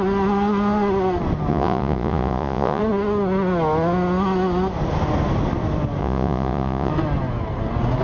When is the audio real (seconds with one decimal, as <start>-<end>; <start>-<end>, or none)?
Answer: 0.0-1.5; 2.8-6.0; 6.9-8.0

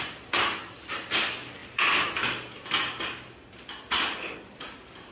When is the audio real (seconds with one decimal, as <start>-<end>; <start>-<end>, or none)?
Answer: 0.0-5.1